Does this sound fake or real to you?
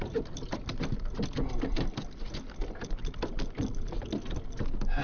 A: real